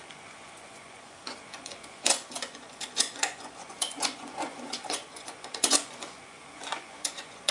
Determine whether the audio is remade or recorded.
remade